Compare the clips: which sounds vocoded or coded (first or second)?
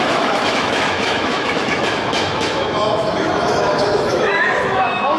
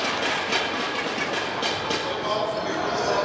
first